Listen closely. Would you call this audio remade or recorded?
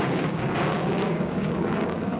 remade